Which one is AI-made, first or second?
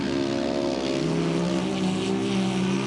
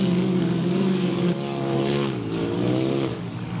second